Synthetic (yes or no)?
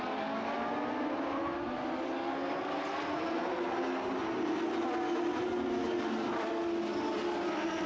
no